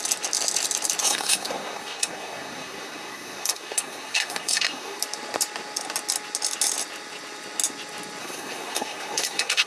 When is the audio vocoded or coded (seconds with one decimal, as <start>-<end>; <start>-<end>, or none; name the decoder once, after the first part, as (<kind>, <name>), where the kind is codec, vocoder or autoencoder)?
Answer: 1.0-5.0 (codec, SNAC); 8.2-9.7